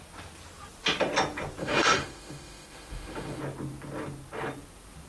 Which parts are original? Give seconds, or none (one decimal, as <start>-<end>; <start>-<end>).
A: 0.0-1.6; 3.4-5.1

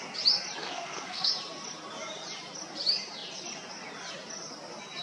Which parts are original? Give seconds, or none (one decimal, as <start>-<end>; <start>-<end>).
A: 0.0-0.6; 1.3-5.0

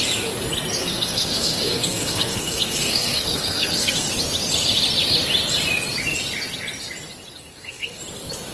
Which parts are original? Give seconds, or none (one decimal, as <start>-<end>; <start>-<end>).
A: 0.0-0.8; 4.1-7.5; 8.0-8.5

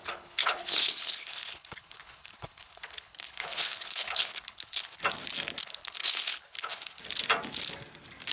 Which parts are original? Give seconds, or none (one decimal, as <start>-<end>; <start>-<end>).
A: 5.0-5.6; 7.0-8.3

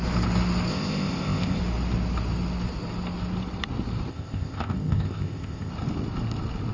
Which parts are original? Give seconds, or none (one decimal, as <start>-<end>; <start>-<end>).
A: 0.0-0.7; 1.6-4.1; 5.7-6.7

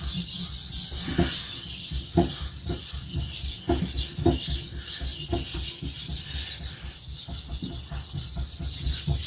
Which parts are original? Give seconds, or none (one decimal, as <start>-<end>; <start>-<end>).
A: 0.0-9.3

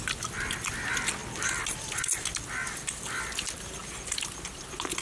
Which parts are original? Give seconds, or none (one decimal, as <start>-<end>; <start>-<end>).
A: 0.0-5.0